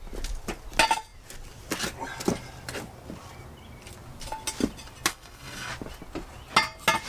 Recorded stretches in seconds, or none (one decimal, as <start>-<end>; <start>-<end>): 0.0-5.1; 5.7-7.1